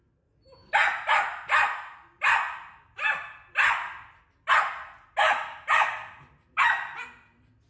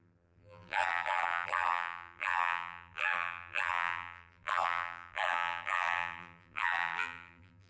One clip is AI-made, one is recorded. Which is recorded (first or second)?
first